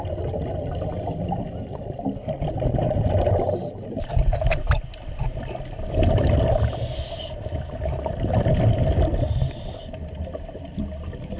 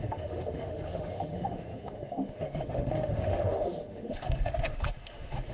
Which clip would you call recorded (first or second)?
first